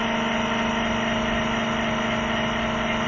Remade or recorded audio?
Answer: recorded